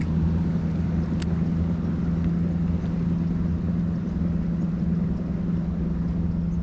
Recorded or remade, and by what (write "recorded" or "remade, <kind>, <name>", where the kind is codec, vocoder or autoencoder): recorded